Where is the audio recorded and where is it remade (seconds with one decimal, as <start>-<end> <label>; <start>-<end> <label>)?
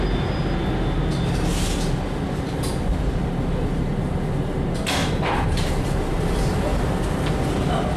0.0-5.0 recorded; 5.0-6.9 remade; 6.9-8.0 recorded